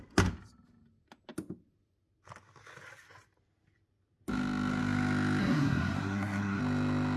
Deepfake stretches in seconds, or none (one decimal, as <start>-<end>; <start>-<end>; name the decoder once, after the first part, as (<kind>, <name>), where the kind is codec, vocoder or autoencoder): 5.4-6.6 (codec, SNAC)